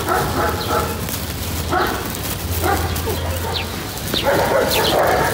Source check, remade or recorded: recorded